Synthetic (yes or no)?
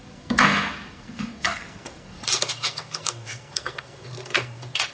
yes